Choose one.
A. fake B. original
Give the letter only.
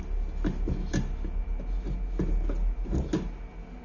B